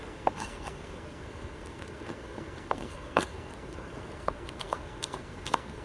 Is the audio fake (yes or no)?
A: yes